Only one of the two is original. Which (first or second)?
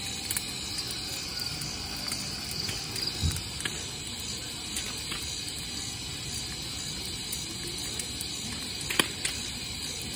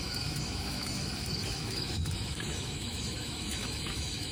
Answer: first